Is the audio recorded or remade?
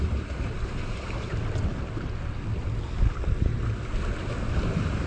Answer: recorded